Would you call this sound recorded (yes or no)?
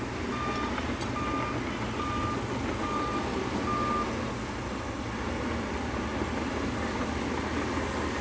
yes